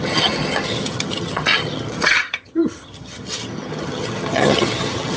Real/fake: fake